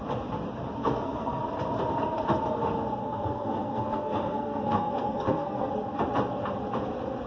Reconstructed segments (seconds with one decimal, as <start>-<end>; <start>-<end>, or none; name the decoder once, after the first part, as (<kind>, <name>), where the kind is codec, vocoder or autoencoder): 0.8-1.4 (codec, SNAC); 3.0-5.7